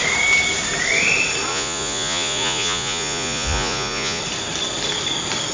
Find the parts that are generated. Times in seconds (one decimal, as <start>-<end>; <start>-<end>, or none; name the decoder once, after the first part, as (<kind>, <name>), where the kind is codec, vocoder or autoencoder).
1.5-4.2 (vocoder, Vocos)